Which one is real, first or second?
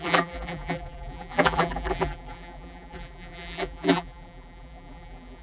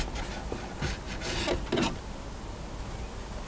second